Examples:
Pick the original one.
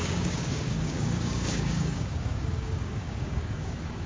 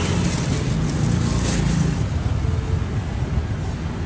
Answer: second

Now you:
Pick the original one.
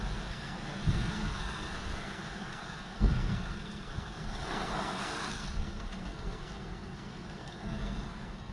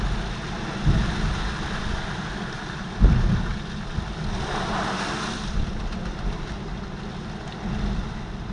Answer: second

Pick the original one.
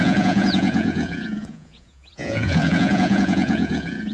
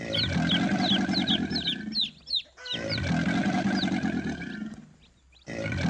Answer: second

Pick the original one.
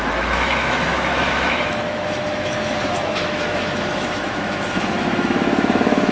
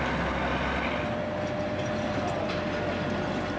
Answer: second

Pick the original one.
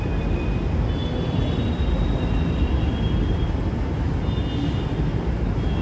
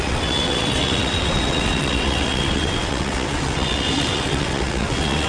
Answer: first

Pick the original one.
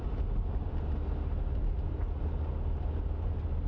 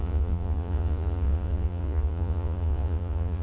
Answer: first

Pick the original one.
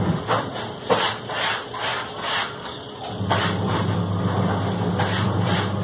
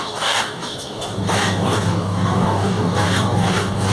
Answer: first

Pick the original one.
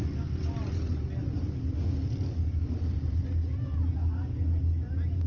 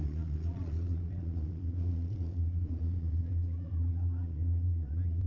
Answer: first